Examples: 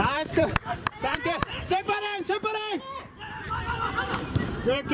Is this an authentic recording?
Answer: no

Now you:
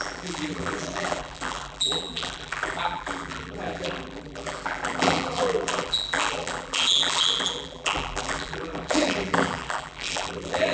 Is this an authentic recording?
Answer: no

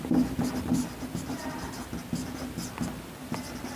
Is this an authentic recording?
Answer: yes